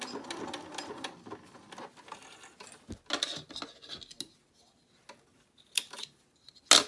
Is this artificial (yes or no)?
no